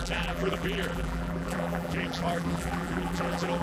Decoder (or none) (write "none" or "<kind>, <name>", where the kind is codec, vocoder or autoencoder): vocoder, BigVGAN v2